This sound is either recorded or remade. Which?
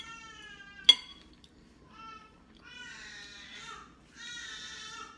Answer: recorded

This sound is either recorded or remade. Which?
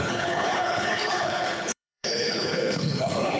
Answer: remade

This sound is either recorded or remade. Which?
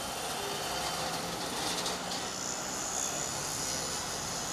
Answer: recorded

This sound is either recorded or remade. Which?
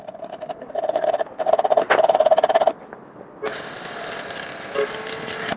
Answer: recorded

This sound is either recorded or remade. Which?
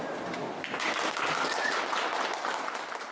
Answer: recorded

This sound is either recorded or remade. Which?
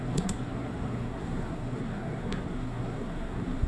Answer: remade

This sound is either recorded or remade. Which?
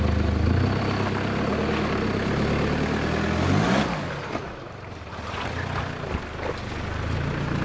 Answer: recorded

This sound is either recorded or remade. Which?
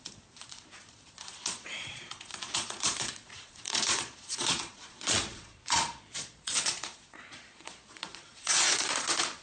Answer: remade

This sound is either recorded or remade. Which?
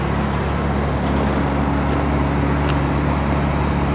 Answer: recorded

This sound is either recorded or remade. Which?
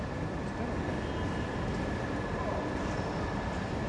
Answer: recorded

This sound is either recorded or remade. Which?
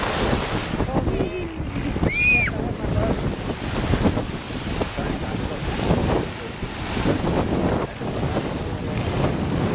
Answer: recorded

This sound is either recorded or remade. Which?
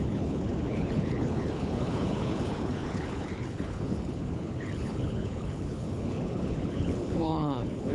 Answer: remade